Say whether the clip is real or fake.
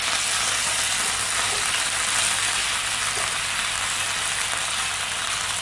real